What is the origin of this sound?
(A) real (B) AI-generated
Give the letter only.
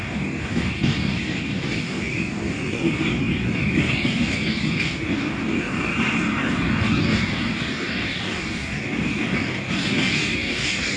B